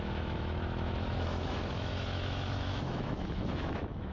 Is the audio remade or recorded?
remade